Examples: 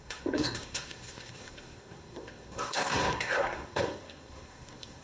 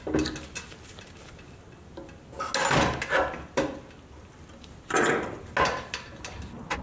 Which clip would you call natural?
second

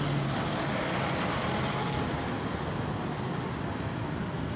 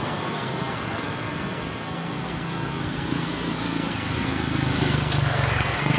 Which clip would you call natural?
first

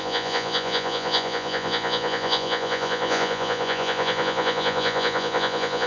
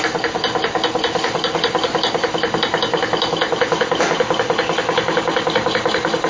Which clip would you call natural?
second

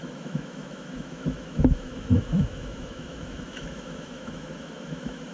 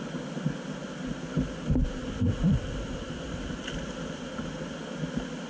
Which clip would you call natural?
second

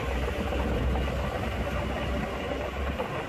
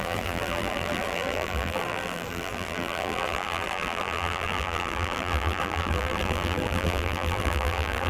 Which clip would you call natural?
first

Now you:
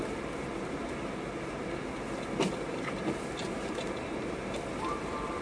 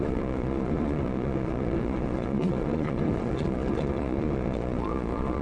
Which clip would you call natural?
first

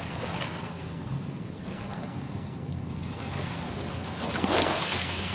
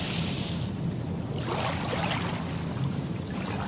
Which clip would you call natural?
second